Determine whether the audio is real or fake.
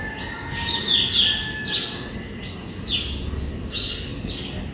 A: real